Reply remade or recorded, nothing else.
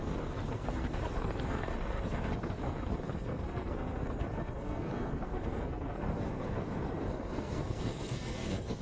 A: remade